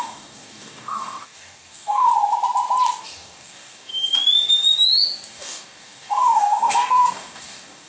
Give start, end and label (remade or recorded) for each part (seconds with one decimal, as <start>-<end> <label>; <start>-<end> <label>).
0.0-2.1 remade; 2.1-3.0 recorded; 3.0-3.9 remade; 3.9-5.3 recorded; 5.3-7.9 remade